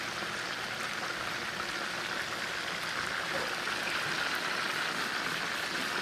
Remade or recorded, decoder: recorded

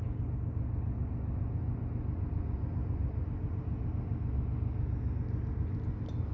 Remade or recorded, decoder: recorded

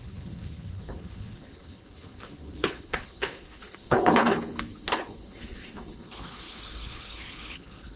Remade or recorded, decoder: remade, codec, HILCodec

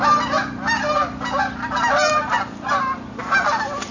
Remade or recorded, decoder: recorded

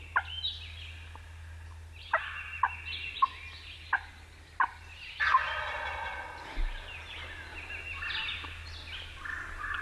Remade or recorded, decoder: recorded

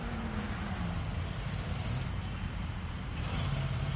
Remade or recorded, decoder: remade, vocoder, BigVGAN v2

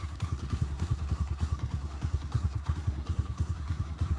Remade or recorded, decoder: remade, codec, SNAC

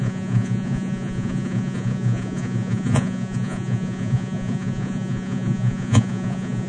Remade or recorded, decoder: remade, vocoder, Vocos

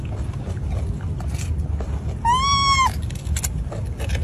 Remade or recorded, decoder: recorded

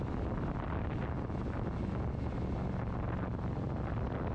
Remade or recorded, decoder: recorded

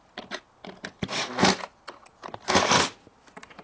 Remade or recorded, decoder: recorded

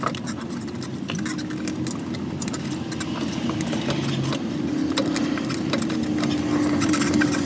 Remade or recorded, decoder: recorded